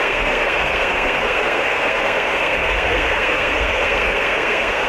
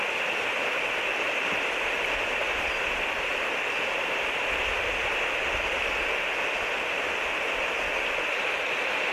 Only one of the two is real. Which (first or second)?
second